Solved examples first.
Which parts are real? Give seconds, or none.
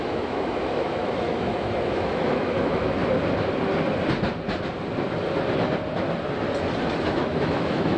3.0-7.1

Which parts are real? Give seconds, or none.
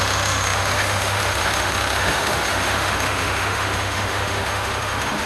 none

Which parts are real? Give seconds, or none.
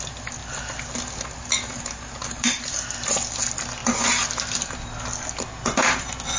0.0-6.4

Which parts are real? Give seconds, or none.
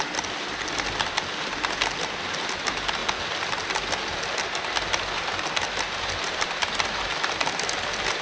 0.0-8.2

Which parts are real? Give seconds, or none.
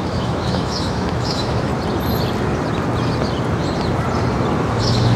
1.7-4.8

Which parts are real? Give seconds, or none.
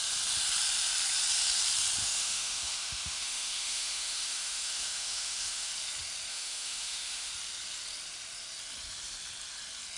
0.0-2.0; 5.7-6.3; 7.3-10.0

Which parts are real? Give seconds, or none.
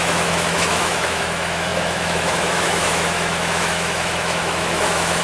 none